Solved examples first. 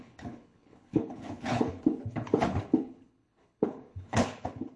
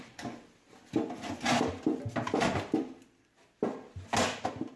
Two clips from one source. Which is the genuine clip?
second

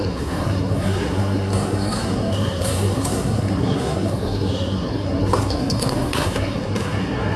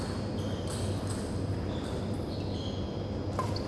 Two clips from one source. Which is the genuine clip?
second